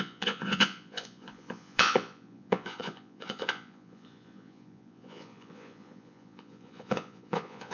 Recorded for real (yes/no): no